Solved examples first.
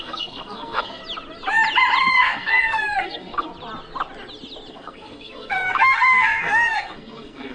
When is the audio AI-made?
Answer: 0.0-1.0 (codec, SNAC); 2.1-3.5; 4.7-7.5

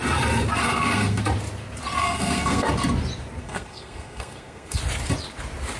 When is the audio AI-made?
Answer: 0.6-1.2 (codec, SNAC); 2.0-2.7; 3.4-4.8

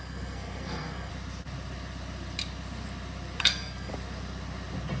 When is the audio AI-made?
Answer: 0.0-1.1 (codec, SNAC); 3.4-3.9

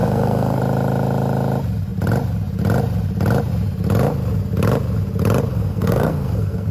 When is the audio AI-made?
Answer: 0.0-0.6 (codec, SNAC); 5.5-6.7

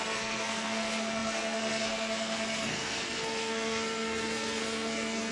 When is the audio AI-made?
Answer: 0.0-5.3 (codec, SNAC)

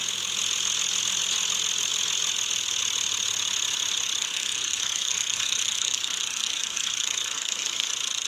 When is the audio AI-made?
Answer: 4.2-7.9 (codec, SNAC)

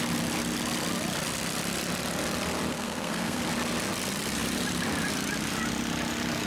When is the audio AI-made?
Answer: 2.7-3.4 (codec, SNAC)

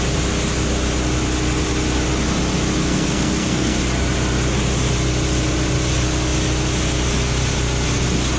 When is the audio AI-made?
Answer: 2.8-3.8 (codec, SNAC)